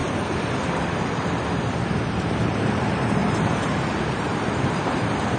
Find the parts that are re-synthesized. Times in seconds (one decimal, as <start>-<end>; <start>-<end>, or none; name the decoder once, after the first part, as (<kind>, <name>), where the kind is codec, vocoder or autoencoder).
1.1-5.4 (vocoder, BigVGAN v2)